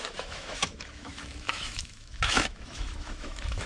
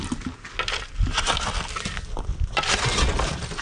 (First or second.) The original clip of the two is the second